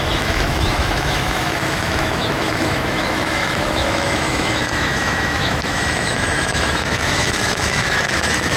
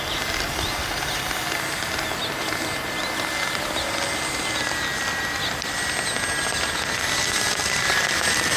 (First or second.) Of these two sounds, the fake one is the first